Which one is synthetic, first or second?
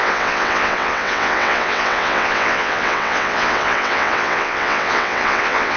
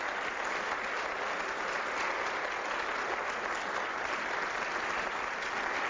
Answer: first